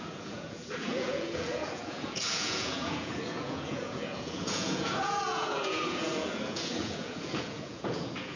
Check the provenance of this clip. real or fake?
fake